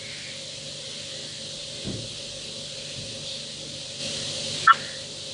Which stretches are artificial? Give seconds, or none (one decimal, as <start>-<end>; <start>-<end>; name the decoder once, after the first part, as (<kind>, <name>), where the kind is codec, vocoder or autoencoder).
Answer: none